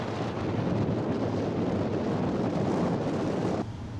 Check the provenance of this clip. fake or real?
real